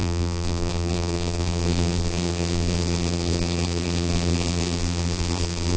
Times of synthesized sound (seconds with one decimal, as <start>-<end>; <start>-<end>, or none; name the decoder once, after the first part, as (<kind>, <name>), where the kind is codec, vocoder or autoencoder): 0.0-5.8 (vocoder, BigVGAN v2)